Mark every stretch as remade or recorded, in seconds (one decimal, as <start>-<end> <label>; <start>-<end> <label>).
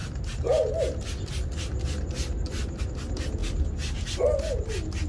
0.0-5.1 recorded